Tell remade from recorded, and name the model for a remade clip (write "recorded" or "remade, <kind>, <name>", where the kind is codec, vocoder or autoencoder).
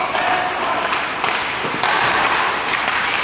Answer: recorded